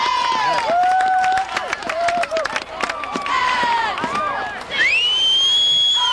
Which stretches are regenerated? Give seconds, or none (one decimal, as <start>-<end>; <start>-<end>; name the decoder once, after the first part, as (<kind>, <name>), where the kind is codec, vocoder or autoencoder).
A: 0.8-2.5 (vocoder, BigVGAN v2); 3.4-3.9